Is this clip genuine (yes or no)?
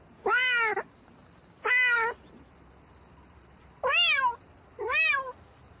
yes